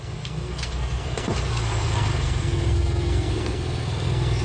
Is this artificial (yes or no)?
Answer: yes